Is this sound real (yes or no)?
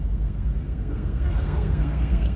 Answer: no